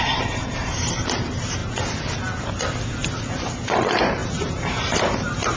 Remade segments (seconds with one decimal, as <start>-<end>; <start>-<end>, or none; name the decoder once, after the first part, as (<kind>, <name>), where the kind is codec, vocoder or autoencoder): 0.0-1.6 (vocoder, BigVGAN v2); 3.2-5.6

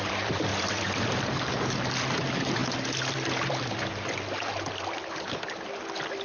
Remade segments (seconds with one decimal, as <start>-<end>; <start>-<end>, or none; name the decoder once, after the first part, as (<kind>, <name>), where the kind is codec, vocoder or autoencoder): 0.0-0.5 (vocoder, BigVGAN v2); 1.3-2.6; 3.1-3.9; 4.4-6.2